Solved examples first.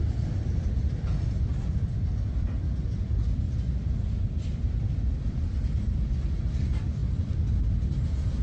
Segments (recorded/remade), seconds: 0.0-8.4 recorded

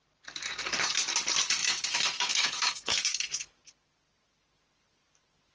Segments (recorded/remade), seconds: 0.0-1.6 recorded; 1.6-3.5 remade; 3.5-5.5 recorded

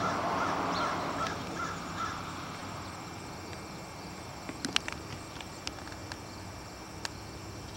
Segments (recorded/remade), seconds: 0.0-7.8 recorded

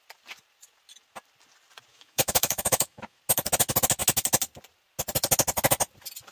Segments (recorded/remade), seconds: 0.0-1.9 recorded; 1.9-3.2 remade; 3.2-6.3 recorded

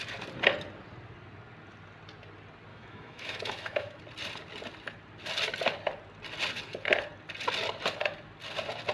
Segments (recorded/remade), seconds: 0.0-2.7 recorded; 2.7-4.0 remade; 4.0-8.9 recorded

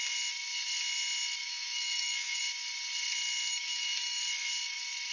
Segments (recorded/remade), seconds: 0.0-1.4 recorded; 1.4-2.4 remade; 2.4-3.5 recorded; 3.5-4.2 remade; 4.2-5.1 recorded